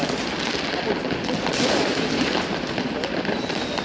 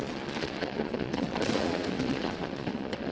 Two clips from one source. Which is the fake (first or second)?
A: second